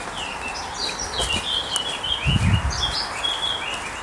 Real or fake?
real